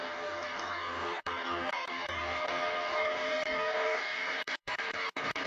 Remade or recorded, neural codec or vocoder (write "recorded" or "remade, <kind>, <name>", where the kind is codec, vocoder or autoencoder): remade, codec, DAC